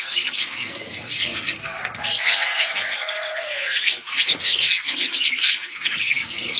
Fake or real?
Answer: fake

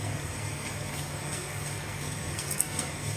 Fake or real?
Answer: fake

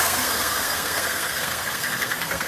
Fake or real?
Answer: fake